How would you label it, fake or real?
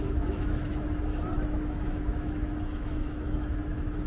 fake